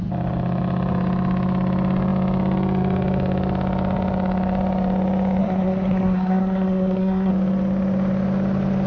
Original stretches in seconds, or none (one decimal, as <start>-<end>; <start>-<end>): 0.0-5.4; 7.3-8.9